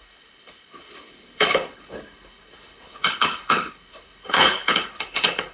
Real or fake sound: fake